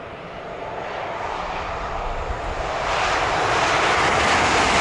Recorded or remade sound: recorded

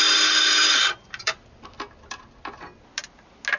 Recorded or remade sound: recorded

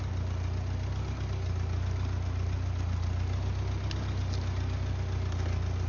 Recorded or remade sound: recorded